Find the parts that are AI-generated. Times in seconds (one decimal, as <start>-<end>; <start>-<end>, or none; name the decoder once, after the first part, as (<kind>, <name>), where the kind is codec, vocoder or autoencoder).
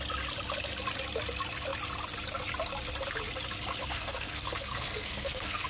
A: 3.8-5.7 (codec, SNAC)